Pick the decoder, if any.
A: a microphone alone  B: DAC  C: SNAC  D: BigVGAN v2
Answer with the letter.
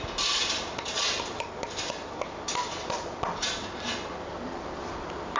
A